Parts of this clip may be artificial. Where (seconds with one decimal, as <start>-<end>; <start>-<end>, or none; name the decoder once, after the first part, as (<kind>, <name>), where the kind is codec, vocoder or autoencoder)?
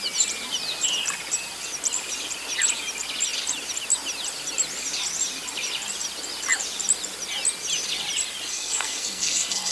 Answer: 8.5-9.7 (codec, SNAC)